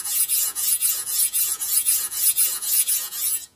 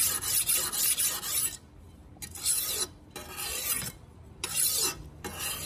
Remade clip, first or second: first